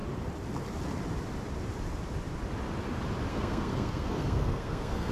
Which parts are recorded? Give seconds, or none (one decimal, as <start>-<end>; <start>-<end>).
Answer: 0.0-3.3